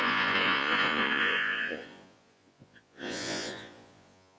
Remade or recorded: remade